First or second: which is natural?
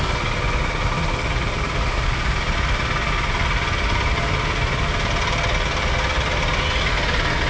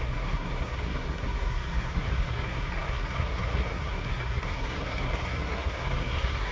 first